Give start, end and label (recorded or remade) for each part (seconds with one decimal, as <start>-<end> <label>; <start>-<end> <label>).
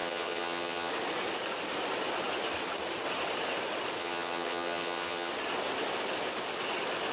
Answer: 0.0-0.9 remade; 0.9-4.0 recorded; 4.0-5.3 remade; 5.3-7.1 recorded